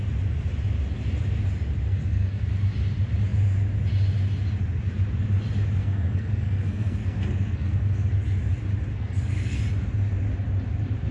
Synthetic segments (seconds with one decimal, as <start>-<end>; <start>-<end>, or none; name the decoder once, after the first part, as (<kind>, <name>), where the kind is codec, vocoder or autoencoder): 1.8-2.4 (codec, SNAC); 5.8-8.1; 8.9-9.6